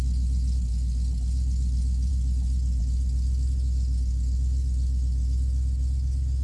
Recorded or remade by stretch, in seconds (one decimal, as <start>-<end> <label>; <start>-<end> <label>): 0.0-6.4 recorded